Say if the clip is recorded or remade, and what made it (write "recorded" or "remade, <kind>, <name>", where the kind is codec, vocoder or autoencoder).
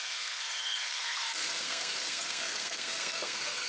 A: remade, codec, SNAC